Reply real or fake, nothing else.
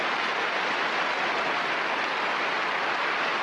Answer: real